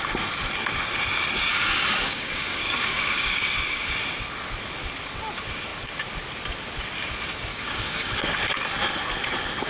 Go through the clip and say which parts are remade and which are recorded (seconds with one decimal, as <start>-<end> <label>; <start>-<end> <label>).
0.0-1.5 recorded; 1.5-3.9 remade; 3.9-7.5 recorded; 7.5-8.4 remade; 8.4-9.7 recorded